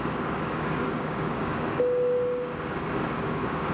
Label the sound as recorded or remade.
remade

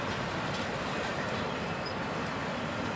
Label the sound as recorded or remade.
recorded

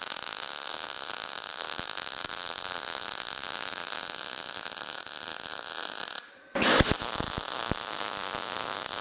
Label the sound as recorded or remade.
recorded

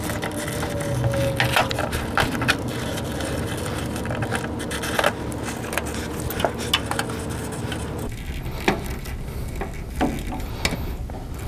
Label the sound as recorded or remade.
recorded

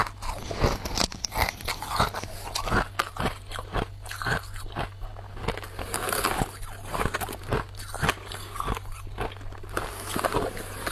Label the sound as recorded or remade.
recorded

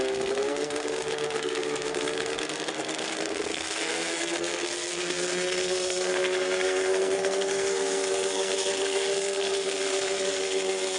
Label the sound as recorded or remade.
remade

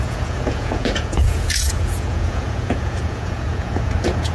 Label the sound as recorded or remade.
remade